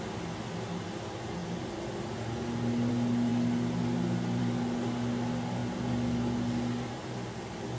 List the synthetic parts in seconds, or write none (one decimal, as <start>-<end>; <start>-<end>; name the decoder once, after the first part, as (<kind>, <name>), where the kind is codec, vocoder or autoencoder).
none